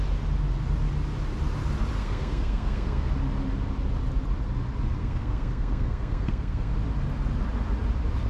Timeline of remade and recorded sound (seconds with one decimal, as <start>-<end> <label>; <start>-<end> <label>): 0.0-2.0 recorded; 2.0-3.1 remade; 3.1-5.0 recorded; 5.0-6.7 remade; 6.7-8.3 recorded

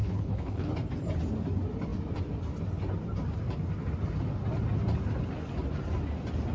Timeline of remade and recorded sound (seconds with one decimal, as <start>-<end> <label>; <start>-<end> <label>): 0.0-0.7 remade; 0.7-6.5 recorded

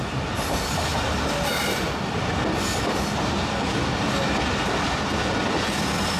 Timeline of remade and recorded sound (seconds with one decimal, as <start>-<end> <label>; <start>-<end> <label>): 0.0-6.2 recorded

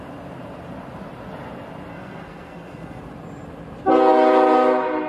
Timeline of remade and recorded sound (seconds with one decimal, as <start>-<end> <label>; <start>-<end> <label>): 0.0-1.9 recorded; 1.9-3.0 remade; 3.0-5.1 recorded

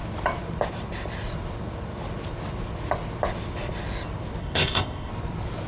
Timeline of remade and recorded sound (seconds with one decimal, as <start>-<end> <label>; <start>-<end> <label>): 0.0-4.4 recorded; 4.4-5.1 remade; 5.1-5.7 recorded

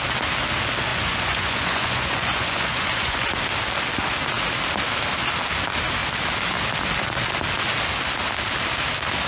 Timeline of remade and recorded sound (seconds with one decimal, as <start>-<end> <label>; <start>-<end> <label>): 0.0-0.9 recorded; 0.9-3.3 remade; 3.3-9.3 recorded